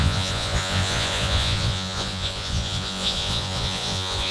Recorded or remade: remade